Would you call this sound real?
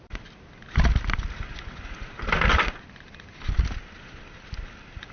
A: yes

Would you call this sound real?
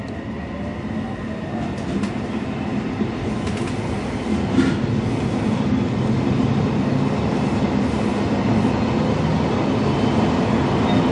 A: yes